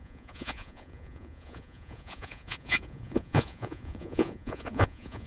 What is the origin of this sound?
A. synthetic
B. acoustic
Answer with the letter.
A